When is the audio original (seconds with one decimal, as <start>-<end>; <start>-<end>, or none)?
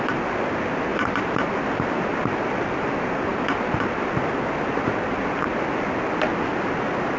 0.0-7.2